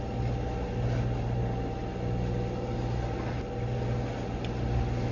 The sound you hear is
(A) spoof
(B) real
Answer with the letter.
B